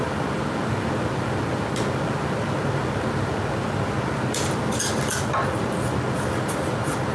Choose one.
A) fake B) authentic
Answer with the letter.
B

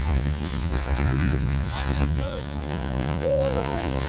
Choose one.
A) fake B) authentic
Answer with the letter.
A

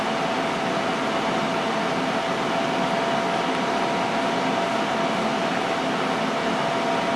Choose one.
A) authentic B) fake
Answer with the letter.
A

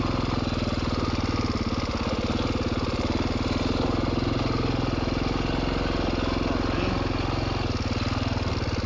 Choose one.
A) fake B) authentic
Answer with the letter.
B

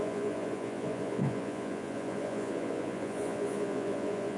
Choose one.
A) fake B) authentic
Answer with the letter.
A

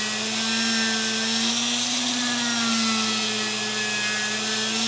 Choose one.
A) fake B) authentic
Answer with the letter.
B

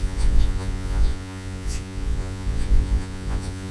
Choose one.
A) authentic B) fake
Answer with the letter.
B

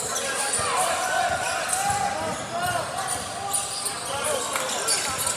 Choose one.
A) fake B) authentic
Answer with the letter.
B